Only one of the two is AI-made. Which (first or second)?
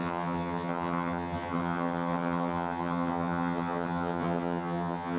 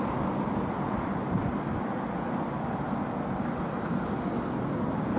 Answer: first